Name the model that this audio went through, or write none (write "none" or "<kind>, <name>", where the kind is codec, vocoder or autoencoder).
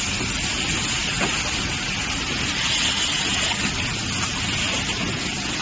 none